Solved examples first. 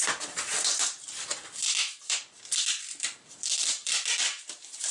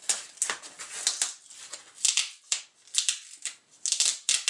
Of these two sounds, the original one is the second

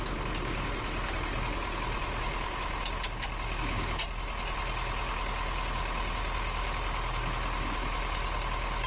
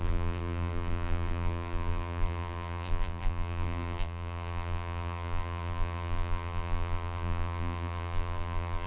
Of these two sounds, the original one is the first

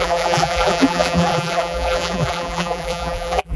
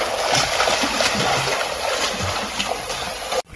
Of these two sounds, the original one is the second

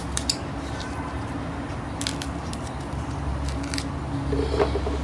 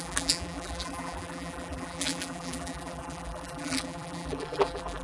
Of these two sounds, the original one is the first